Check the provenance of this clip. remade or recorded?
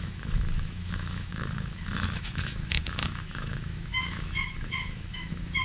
remade